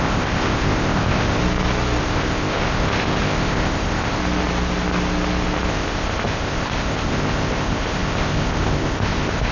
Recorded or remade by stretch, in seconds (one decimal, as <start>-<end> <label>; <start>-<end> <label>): 0.0-1.4 remade; 1.4-2.0 recorded; 2.0-4.2 remade; 4.2-5.7 recorded; 5.7-9.5 remade